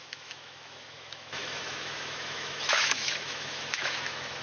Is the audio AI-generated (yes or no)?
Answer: yes